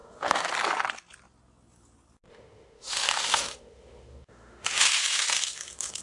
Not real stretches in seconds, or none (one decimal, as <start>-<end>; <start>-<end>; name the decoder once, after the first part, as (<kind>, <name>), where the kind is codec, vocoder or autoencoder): 0.0-0.5 (autoencoder, DAC-VAE); 2.3-6.0